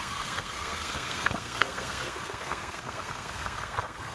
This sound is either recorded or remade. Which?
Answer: remade